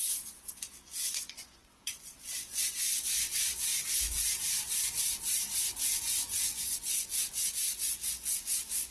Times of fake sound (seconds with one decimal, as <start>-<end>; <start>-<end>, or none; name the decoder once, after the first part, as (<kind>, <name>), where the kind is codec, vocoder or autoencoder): 0.0-3.7 (vocoder, Vocos); 6.0-8.9

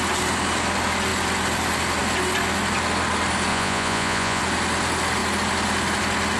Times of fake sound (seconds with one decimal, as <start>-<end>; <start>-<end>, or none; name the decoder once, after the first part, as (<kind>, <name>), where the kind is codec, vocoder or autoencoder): 3.5-4.4 (vocoder, Vocos)

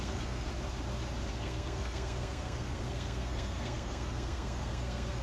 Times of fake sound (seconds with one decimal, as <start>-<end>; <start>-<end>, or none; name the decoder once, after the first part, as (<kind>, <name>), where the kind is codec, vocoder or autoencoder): 0.0-0.5 (codec, SNAC); 1.3-5.2

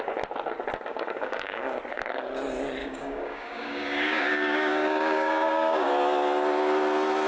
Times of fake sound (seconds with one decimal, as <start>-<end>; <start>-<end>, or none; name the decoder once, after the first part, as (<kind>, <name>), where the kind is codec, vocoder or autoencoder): 0.9-1.8 (codec, DAC); 2.8-5.9

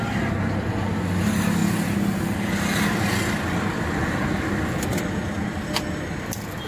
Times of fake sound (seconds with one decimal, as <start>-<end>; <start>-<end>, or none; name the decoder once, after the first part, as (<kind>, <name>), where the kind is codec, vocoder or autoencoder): none